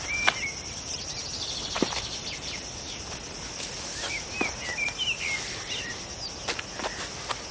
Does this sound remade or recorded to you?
recorded